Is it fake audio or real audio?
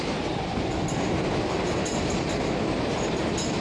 real